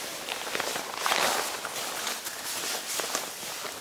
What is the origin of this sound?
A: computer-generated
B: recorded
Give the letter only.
B